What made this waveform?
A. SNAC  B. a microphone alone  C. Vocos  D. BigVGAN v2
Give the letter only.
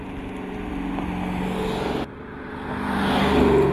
B